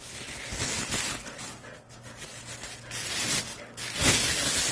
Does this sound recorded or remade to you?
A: recorded